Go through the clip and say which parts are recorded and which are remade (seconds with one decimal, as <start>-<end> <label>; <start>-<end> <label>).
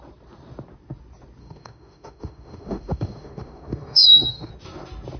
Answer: 0.0-1.4 recorded; 1.4-4.5 remade; 4.5-5.2 recorded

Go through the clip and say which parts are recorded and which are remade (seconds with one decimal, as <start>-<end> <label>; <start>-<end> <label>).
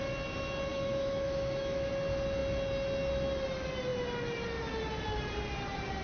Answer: 0.0-0.7 recorded; 0.7-1.9 remade; 1.9-6.0 recorded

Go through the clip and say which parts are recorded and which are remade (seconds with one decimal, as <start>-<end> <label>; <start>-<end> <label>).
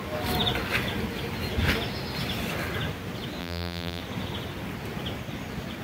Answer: 0.0-3.4 recorded; 3.4-4.0 remade; 4.0-5.8 recorded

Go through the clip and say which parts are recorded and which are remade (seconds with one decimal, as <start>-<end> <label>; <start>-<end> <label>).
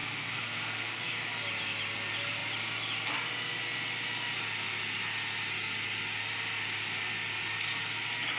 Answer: 0.0-1.0 remade; 1.0-8.4 recorded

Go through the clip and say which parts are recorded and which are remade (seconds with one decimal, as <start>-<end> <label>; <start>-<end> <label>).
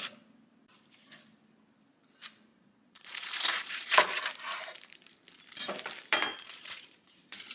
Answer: 0.0-2.5 recorded; 2.5-4.2 remade; 4.2-6.3 recorded; 6.3-7.5 remade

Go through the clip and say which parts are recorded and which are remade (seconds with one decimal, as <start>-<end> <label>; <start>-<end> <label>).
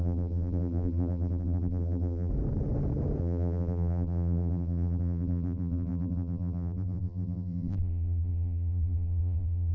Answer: 0.0-2.3 remade; 2.3-3.2 recorded; 3.2-9.7 remade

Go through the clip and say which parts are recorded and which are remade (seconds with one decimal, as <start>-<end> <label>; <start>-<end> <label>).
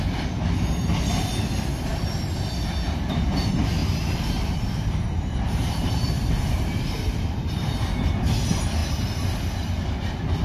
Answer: 0.0-3.8 recorded; 3.8-7.8 remade; 7.8-10.4 recorded